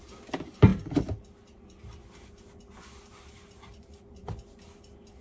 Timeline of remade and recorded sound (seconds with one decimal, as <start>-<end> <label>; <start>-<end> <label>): 0.0-5.2 recorded